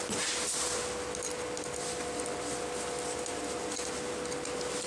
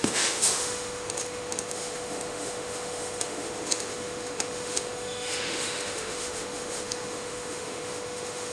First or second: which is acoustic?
first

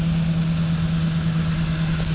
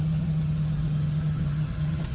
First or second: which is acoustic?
first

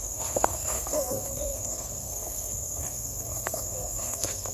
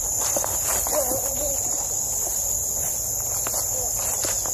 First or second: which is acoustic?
second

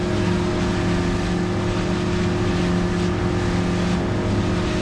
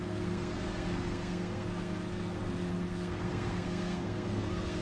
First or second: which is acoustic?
first